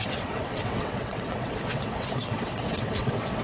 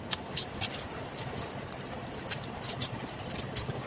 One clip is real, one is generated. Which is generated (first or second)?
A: first